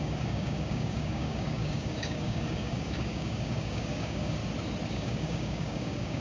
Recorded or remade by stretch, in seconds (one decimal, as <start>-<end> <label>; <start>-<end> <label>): 0.0-4.4 remade; 4.4-4.9 recorded; 4.9-6.2 remade